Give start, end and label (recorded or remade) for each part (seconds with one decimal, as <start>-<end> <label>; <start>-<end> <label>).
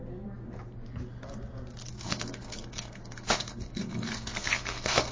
0.0-1.9 recorded; 1.9-5.1 remade